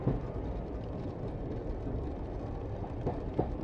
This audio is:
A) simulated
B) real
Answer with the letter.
B